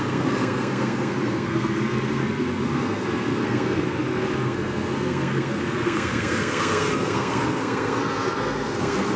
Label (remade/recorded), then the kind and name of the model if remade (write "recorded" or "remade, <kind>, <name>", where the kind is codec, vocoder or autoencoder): remade, codec, SNAC